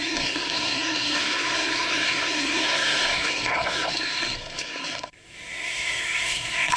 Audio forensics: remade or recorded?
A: remade